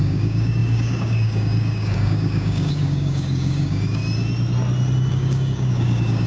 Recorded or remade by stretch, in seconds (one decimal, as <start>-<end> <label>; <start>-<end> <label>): 0.0-4.0 remade; 4.0-5.1 recorded; 5.1-6.3 remade